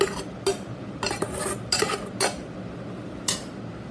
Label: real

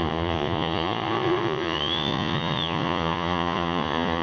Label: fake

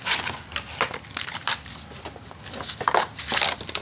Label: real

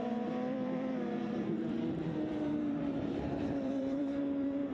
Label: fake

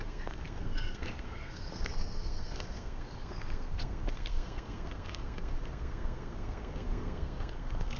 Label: fake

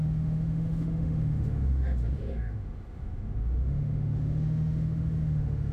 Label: fake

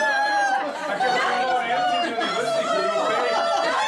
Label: real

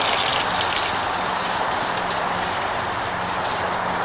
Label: real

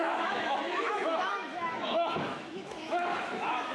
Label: fake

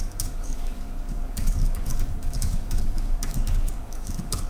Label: fake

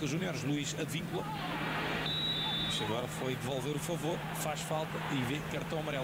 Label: fake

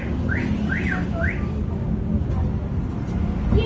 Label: real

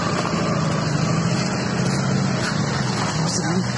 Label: real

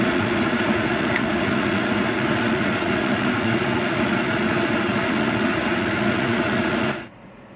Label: fake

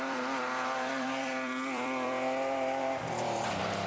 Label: fake